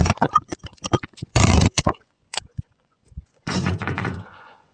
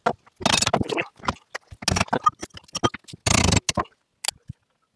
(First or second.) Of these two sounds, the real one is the second